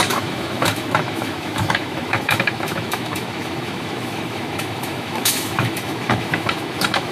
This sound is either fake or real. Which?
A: fake